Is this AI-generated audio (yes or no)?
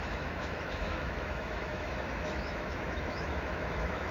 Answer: yes